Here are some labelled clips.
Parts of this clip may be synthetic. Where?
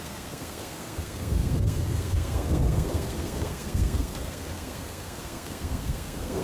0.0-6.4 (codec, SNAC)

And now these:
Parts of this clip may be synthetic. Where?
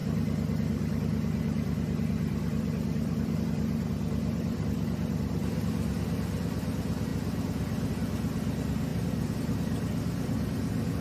none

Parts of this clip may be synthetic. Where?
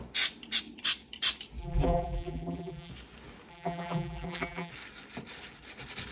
1.6-2.9 (vocoder, BigVGAN v2); 3.5-4.7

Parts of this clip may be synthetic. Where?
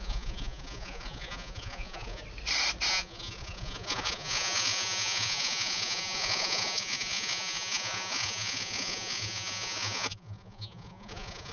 0.0-2.2 (vocoder, Vocos); 2.9-11.5